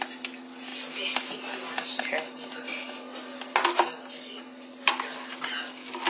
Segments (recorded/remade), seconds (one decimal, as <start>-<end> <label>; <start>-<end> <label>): 0.0-6.1 recorded